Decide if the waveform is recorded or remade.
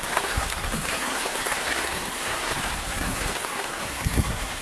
remade